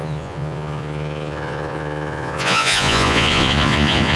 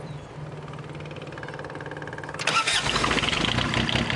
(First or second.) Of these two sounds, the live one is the second